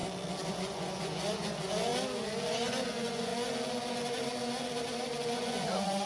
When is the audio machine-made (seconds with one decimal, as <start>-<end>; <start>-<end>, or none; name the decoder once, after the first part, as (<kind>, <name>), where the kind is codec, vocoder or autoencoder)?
0.5-1.9 (vocoder, Vocos); 2.9-3.3; 5.3-6.1